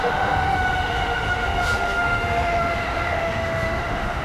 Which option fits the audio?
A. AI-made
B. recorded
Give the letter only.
A